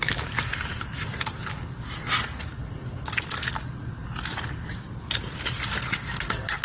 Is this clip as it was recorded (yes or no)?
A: yes